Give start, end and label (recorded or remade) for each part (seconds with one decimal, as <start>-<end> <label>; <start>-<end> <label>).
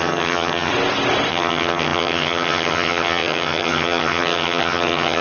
0.0-0.7 remade; 0.7-1.3 recorded; 1.3-5.2 remade